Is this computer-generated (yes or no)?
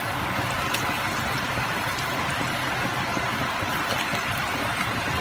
no